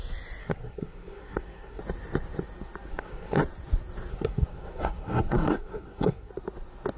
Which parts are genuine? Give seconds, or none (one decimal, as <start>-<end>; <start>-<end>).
0.0-0.4; 1.8-2.9; 3.4-4.1; 6.3-7.0

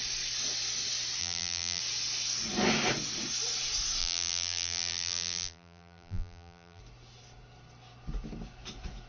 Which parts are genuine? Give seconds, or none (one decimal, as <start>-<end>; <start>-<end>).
0.0-1.2; 1.8-4.0; 6.8-9.1